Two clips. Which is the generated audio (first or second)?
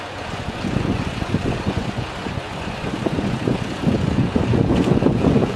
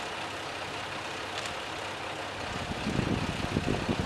first